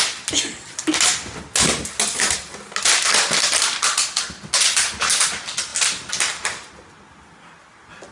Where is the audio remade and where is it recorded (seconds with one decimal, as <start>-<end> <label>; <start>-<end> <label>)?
0.0-8.1 recorded